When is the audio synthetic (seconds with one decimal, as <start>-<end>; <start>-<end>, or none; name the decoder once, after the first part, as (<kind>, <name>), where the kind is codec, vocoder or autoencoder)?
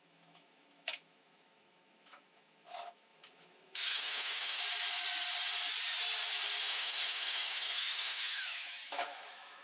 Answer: 0.0-4.6 (autoencoder, DAC-VAE); 6.6-9.6